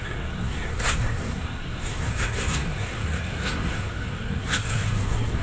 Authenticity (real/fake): fake